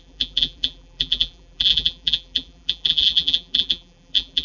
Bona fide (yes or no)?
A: no